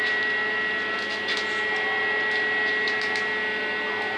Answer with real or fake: real